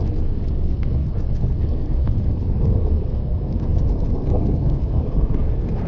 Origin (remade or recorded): remade